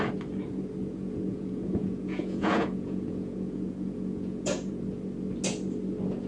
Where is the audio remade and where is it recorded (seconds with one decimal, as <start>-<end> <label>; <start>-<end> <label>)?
0.0-0.9 recorded; 0.9-4.7 remade; 4.7-6.3 recorded